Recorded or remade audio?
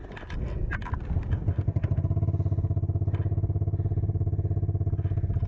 recorded